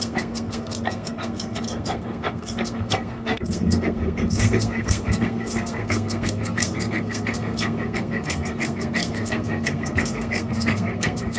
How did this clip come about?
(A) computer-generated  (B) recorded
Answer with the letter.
A